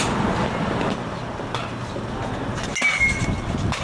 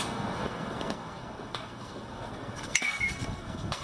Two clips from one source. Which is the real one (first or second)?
first